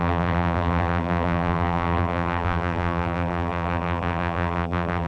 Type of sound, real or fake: fake